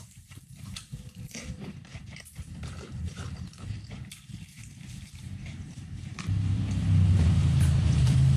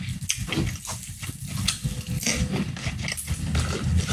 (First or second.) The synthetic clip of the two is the first